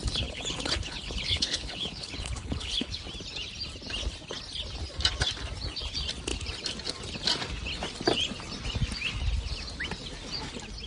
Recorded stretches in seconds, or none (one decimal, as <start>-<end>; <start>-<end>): 3.0-10.9